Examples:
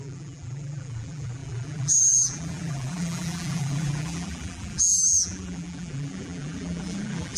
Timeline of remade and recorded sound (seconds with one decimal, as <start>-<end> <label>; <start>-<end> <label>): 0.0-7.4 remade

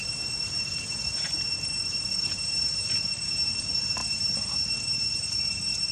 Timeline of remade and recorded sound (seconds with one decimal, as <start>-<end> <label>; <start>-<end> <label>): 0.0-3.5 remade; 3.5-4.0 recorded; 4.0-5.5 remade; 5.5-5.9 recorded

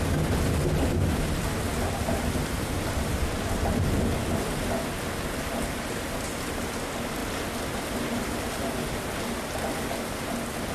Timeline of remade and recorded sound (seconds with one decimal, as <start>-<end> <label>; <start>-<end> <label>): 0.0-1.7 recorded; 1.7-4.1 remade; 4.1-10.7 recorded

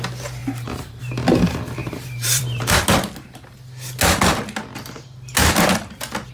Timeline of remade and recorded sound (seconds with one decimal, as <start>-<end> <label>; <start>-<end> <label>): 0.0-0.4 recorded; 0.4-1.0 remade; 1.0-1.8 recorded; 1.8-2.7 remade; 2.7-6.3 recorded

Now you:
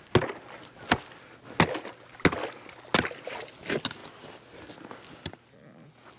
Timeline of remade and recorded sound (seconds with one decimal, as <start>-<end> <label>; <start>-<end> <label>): 0.0-6.2 recorded